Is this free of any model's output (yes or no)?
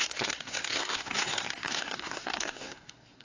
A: no